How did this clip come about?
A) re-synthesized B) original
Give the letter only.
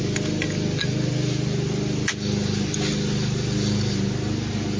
B